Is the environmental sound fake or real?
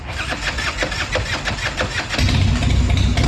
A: real